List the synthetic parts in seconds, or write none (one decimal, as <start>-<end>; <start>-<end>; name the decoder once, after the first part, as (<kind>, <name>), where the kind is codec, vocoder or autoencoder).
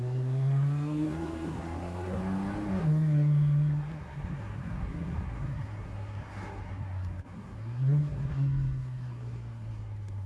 0.0-2.2 (codec, SNAC); 2.8-10.3